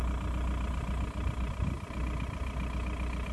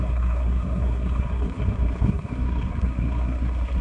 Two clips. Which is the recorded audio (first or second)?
first